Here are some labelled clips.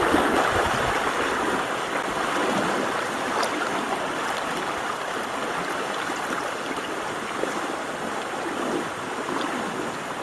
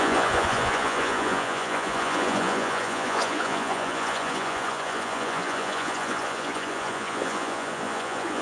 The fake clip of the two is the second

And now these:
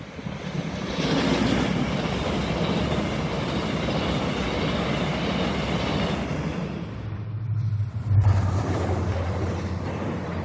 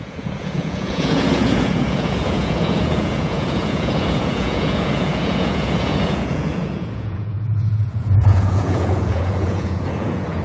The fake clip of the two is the second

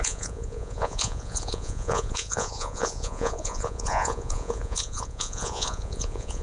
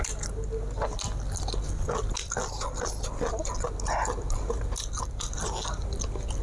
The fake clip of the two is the first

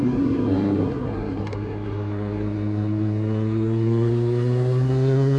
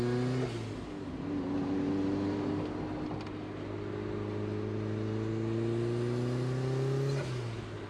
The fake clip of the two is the first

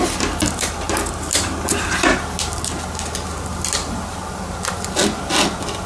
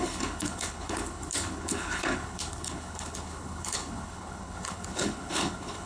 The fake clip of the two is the second